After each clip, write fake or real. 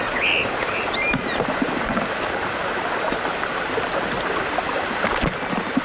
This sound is real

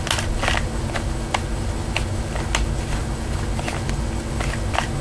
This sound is real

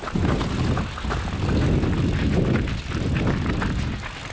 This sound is real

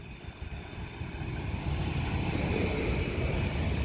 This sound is real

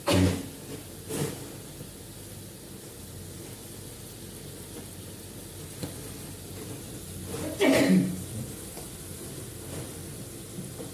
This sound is real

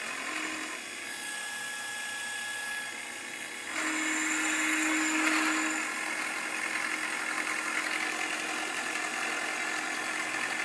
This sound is real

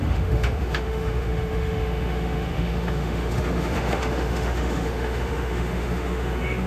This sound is fake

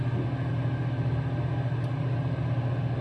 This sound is real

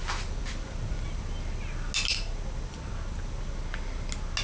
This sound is real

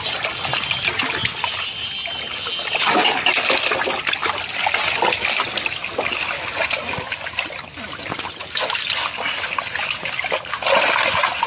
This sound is real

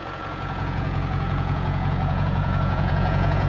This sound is fake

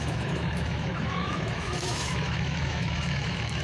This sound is fake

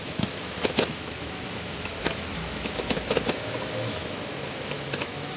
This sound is fake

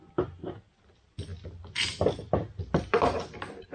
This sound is real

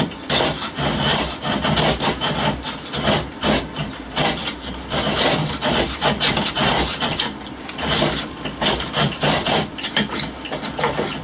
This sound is real